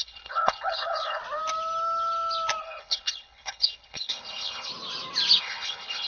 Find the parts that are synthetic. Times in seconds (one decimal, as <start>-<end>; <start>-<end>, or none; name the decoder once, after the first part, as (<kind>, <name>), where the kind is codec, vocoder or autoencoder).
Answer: 0.0-1.2 (codec, HILCodec); 2.6-4.7; 5.4-6.1